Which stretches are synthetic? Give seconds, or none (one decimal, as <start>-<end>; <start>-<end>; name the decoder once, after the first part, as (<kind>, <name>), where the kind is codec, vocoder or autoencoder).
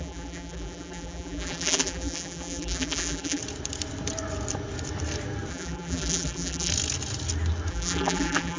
0.0-3.4 (vocoder, BigVGAN v2); 5.5-6.7; 7.7-8.6